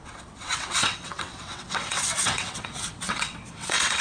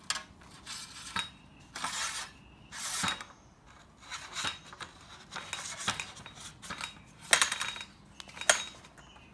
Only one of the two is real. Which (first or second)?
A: second